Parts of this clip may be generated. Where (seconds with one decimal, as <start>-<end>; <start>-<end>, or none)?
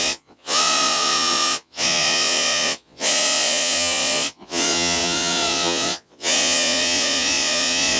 0.0-8.0